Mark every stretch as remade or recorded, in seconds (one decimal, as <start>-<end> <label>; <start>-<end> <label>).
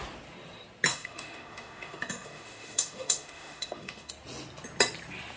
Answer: 0.0-0.9 recorded; 0.9-4.1 remade; 4.1-5.4 recorded